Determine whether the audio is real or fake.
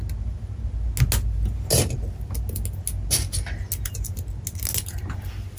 real